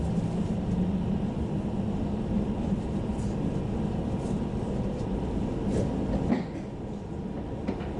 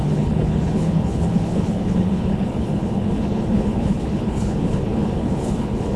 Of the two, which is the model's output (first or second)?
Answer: second